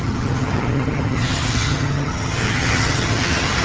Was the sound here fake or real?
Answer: fake